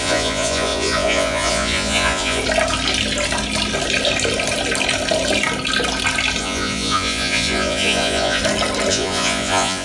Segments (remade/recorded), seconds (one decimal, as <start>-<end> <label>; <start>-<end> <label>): 0.0-2.4 remade; 2.4-6.4 recorded; 6.4-8.4 remade; 8.4-8.9 recorded; 8.9-9.8 remade